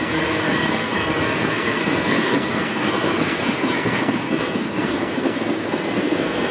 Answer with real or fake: fake